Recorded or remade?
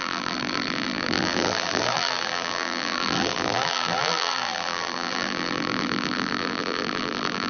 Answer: remade